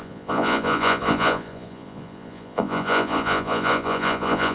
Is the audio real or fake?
fake